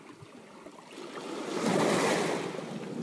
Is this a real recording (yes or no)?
yes